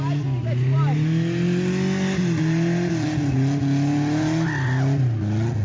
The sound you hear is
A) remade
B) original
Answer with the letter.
B